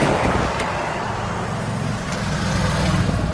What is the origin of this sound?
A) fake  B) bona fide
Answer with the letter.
B